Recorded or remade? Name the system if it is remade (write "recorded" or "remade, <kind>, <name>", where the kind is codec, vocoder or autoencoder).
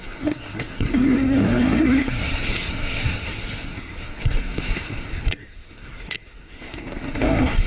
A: remade, codec, SNAC